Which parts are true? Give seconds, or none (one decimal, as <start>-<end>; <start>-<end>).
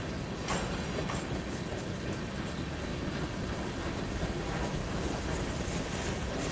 0.0-6.5